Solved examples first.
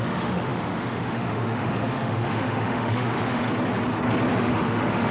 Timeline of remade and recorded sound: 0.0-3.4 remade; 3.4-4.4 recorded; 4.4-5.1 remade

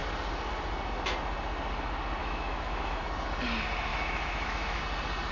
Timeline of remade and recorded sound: 0.0-2.2 recorded; 2.2-3.0 remade; 3.0-3.9 recorded; 3.9-4.8 remade; 4.8-5.3 recorded

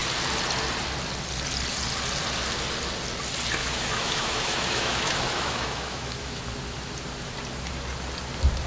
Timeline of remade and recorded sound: 0.0-3.6 recorded; 3.6-6.4 remade; 6.4-8.7 recorded

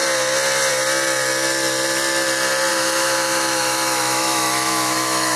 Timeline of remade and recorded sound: 0.0-2.7 recorded; 2.7-5.4 remade

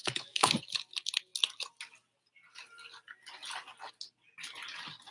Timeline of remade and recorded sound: 0.0-0.5 remade; 0.5-5.1 recorded

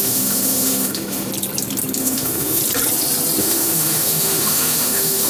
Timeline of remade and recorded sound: 0.0-1.3 remade; 1.3-2.0 recorded; 2.0-2.6 remade; 2.6-3.4 recorded; 3.4-5.3 remade